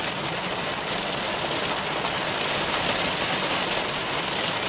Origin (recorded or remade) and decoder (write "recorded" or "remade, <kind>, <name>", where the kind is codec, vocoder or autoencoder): recorded